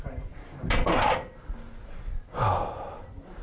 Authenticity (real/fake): real